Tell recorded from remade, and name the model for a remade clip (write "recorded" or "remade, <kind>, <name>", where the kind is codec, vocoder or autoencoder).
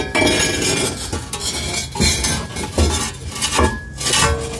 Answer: recorded